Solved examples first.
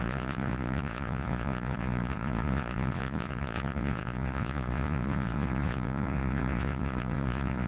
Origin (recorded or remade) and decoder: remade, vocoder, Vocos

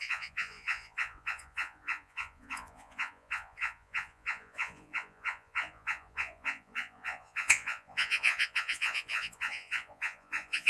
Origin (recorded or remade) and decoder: remade, vocoder, Vocos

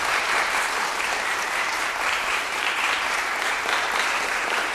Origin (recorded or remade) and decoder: remade, vocoder, BigVGAN v2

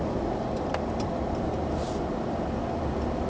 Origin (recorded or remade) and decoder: recorded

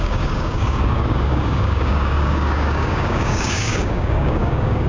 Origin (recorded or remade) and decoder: remade, codec, DAC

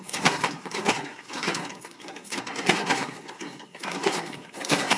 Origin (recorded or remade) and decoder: remade, codec, SNAC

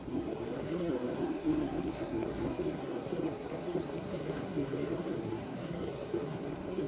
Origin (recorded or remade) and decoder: remade, codec, SNAC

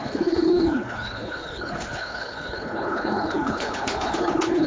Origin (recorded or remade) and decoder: remade, codec, HILCodec